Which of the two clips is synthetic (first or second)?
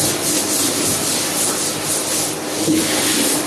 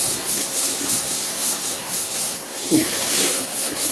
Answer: second